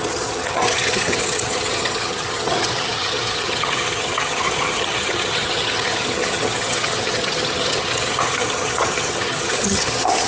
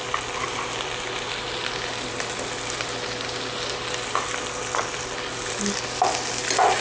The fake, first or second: first